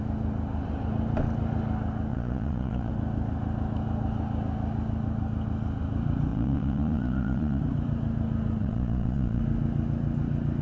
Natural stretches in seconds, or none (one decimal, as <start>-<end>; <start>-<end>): 0.0-2.1; 2.9-6.3; 7.6-8.6; 9.4-10.6